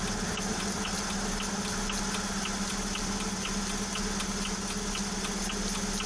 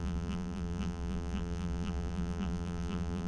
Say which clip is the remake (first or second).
second